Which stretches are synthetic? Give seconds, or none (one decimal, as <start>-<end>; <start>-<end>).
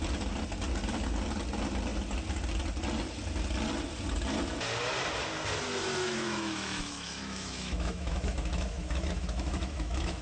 6.0-10.2